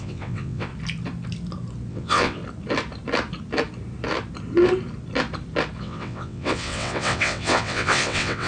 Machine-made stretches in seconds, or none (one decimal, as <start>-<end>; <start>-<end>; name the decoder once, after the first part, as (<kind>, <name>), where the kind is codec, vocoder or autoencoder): 0.0-0.7 (vocoder, WaveNeXt); 1.9-2.4; 5.8-8.5